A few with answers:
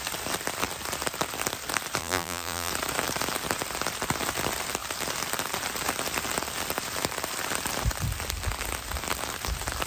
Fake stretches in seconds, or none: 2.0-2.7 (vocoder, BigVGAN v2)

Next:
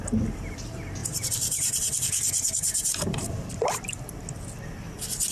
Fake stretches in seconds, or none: 1.0-4.2 (vocoder, BigVGAN v2)

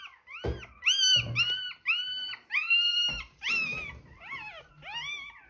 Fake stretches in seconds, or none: 2.1-4.7 (vocoder, BigVGAN v2)

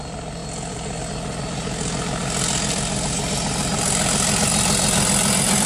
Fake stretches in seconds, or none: 0.4-1.0 (vocoder, BigVGAN v2)

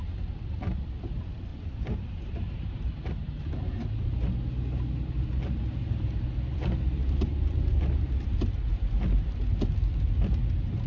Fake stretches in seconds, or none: 1.5-3.1 (vocoder, BigVGAN v2)